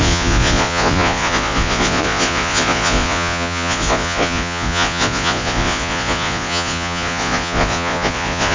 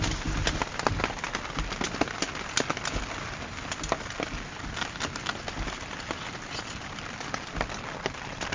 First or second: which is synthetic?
first